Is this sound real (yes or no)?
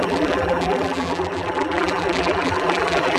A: no